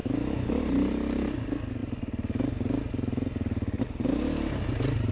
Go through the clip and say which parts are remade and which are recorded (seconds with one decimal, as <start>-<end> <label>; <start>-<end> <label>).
0.0-0.6 remade; 0.6-5.1 recorded